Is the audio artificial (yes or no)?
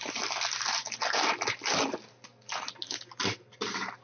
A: no